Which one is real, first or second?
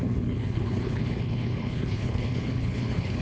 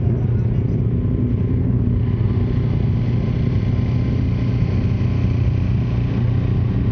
second